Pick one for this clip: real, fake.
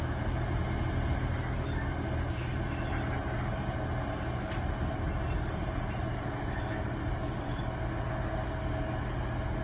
real